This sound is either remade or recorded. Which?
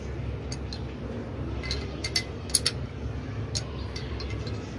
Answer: recorded